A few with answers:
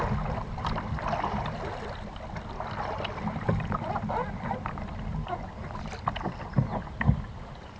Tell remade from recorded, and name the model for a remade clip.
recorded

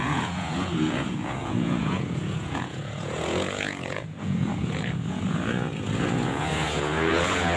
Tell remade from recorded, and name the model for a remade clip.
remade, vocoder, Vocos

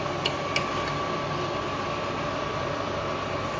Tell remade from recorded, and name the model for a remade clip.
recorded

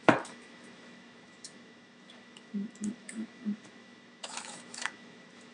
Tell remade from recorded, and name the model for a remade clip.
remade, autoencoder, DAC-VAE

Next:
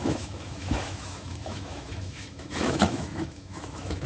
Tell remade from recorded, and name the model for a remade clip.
remade, autoencoder, DAC-VAE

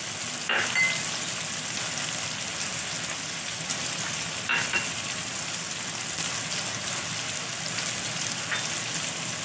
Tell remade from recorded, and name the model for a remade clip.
recorded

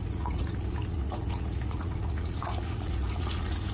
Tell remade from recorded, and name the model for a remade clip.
remade, vocoder, Vocos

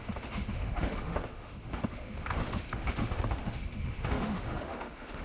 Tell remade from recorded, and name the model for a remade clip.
remade, autoencoder, DAC-VAE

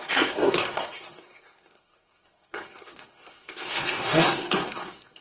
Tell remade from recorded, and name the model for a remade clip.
remade, codec, SNAC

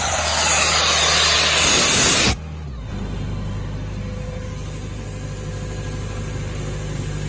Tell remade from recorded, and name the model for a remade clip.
recorded